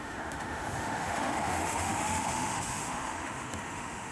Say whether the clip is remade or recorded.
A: remade